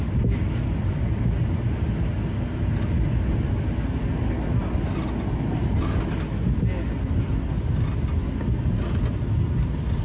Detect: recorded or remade recorded